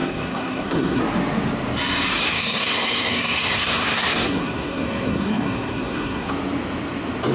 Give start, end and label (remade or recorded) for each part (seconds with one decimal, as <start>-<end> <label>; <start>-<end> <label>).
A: 0.0-1.0 remade; 1.0-2.2 recorded; 2.2-6.3 remade; 6.3-7.3 recorded